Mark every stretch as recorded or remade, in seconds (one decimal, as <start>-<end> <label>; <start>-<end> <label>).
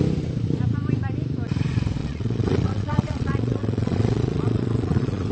0.0-2.0 recorded; 2.0-5.3 remade